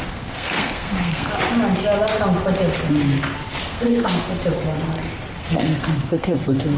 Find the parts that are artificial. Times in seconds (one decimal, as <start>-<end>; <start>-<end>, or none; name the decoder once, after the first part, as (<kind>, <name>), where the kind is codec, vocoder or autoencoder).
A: 0.0-1.3 (codec, SNAC); 3.6-4.4; 5.4-6.8